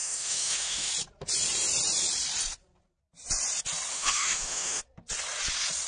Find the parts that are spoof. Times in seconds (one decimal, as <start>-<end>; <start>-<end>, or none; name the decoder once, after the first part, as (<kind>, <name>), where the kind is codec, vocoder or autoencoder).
0.0-0.9 (autoencoder, DAC-VAE); 3.9-4.8